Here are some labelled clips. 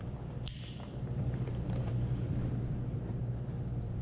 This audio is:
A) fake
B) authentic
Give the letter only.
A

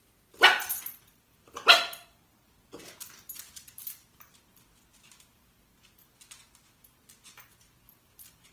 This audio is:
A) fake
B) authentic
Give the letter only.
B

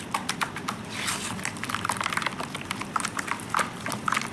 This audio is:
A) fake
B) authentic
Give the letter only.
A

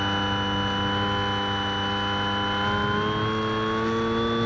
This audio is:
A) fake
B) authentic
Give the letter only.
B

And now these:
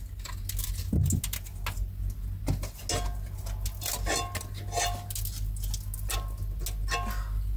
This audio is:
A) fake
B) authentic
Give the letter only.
B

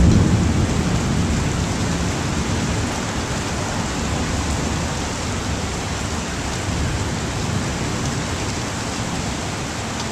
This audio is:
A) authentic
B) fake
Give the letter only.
A